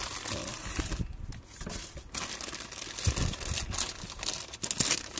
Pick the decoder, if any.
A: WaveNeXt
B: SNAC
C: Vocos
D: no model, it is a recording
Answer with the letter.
D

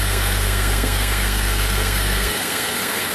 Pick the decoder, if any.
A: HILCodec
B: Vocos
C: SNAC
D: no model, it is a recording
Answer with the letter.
C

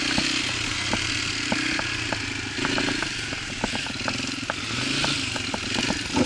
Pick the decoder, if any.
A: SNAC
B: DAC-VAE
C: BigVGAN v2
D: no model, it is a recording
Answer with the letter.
D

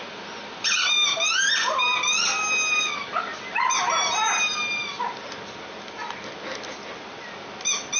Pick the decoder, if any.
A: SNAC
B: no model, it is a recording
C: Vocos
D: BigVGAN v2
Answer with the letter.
B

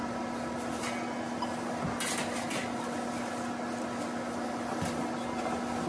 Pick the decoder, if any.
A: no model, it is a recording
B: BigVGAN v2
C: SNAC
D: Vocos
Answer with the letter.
A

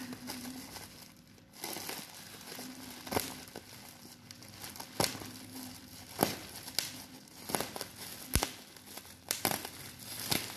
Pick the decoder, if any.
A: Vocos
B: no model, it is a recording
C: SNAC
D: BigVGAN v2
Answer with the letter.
B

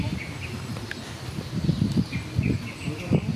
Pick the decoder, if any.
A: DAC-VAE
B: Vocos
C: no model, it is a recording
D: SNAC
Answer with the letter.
C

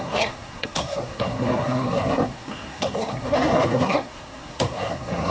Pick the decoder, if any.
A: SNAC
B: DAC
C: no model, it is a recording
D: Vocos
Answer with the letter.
A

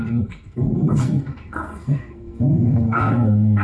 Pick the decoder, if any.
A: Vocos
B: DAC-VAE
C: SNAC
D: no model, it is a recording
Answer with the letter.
C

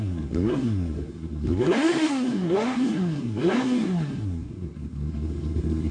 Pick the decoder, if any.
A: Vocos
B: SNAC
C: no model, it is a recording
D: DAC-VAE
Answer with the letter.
B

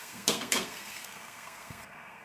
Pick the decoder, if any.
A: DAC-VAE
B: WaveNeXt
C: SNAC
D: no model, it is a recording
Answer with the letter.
C